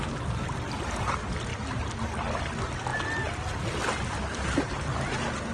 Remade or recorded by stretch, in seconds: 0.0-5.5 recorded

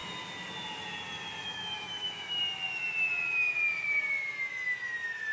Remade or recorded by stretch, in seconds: 0.0-1.4 recorded; 1.4-2.4 remade; 2.4-5.3 recorded